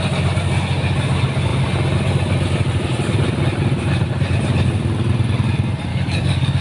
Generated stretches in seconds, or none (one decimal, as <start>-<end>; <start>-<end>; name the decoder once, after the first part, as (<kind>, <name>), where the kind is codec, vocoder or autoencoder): 5.9-6.6 (codec, DAC)